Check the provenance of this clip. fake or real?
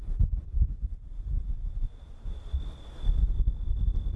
real